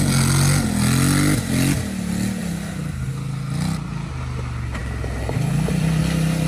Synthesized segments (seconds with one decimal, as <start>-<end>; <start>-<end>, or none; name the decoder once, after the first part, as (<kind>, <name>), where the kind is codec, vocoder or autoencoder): none